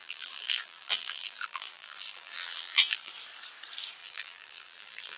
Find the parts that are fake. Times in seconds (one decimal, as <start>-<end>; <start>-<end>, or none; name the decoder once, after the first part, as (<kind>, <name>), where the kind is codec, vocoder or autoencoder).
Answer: 0.0-3.1 (vocoder, BigVGAN v2); 4.0-5.2